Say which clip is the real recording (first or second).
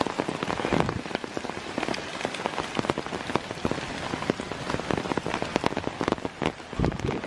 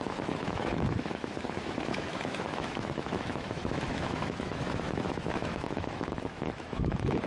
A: first